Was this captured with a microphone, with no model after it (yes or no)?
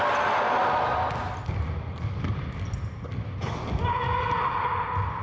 yes